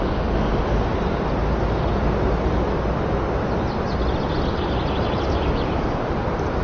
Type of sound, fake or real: real